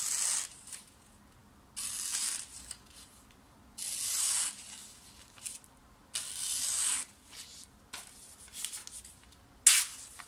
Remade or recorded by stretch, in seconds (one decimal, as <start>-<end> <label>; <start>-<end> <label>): 0.0-10.3 recorded